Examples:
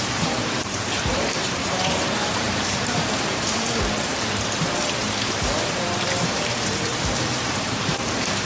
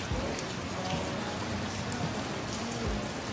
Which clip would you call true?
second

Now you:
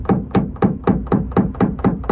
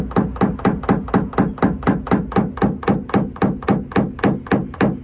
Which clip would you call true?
second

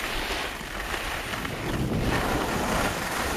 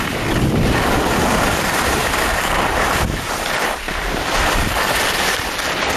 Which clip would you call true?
first